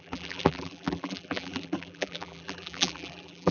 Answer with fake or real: fake